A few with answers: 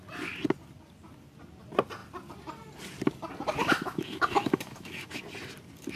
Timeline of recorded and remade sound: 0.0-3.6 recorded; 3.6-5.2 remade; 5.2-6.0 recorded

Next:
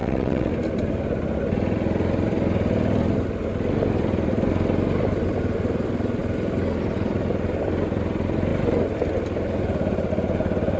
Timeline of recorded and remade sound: 0.0-0.5 remade; 0.5-10.8 recorded

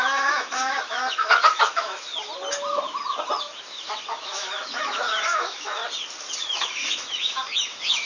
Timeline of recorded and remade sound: 0.0-2.1 remade; 2.1-3.4 recorded; 3.4-5.8 remade; 5.8-6.4 recorded; 6.4-8.1 remade

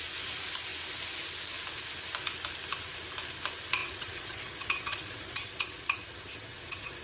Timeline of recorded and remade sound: 0.0-3.8 recorded; 3.8-7.0 remade